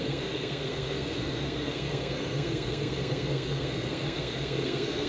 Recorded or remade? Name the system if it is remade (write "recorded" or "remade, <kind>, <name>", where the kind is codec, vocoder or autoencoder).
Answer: remade, codec, SNAC